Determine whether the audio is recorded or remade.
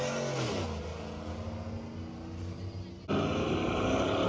recorded